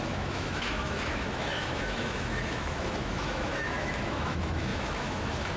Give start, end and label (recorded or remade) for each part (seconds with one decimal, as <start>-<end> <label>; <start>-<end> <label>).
0.0-5.6 remade